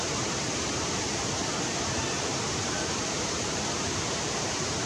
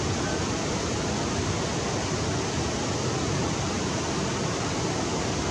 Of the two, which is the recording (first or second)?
second